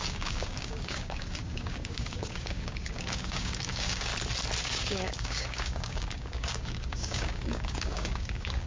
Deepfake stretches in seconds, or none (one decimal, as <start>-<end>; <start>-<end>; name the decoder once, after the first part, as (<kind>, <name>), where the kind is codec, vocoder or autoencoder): 0.0-4.1 (codec, DAC); 4.6-8.7